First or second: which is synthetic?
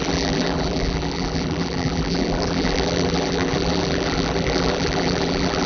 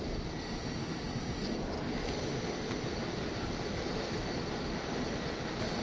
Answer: first